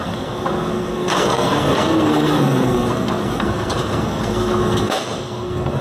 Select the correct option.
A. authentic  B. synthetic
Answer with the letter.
B